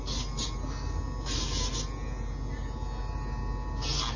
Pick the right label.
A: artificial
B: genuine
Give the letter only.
B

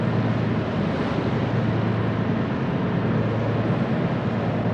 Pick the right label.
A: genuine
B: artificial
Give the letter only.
A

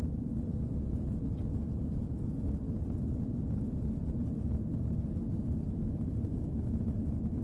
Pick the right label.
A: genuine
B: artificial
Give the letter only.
A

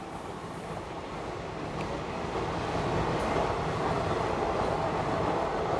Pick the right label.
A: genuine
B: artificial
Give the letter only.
A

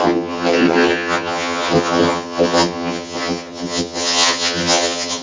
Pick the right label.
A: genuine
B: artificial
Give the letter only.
B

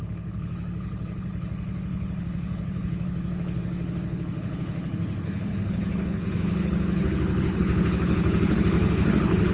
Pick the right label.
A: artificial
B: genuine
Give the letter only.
A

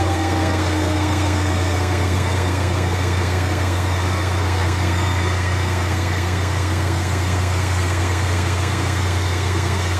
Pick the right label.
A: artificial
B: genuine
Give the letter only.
A